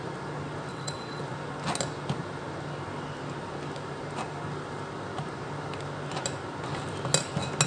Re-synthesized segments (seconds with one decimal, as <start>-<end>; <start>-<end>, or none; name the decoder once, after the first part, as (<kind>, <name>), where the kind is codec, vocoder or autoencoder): 0.7-1.2 (vocoder, WaveNeXt)